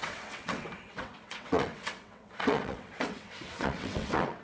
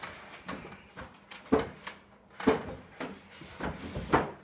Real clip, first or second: second